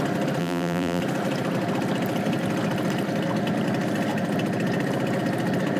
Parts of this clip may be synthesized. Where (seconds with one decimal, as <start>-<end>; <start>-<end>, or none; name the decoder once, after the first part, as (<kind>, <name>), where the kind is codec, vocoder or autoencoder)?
0.4-1.0 (vocoder, BigVGAN v2)